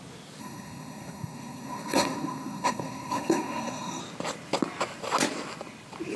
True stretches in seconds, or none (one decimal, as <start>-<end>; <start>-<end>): 0.0-0.4; 4.0-6.2

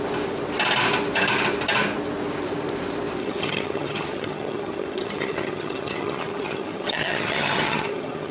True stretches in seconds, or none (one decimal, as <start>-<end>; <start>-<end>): 0.0-3.2

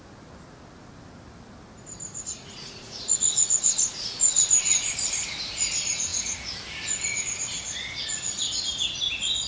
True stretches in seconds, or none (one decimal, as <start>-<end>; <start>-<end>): 0.0-2.1; 4.9-9.5

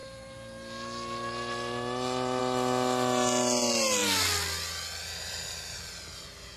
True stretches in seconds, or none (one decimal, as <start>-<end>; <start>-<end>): 2.4-6.6

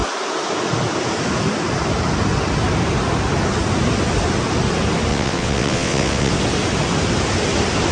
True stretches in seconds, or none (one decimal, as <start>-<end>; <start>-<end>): 0.0-5.1; 6.3-7.9

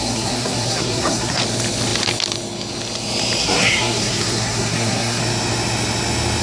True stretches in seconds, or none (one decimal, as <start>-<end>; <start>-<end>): 1.4-3.4; 5.2-6.4

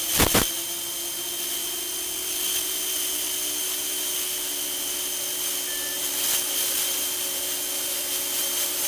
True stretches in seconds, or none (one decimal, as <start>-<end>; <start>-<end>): 0.0-8.9

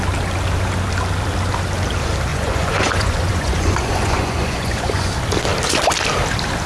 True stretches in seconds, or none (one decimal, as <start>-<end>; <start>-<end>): 0.0-2.3; 5.1-6.7